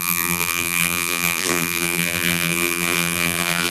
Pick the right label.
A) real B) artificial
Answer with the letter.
B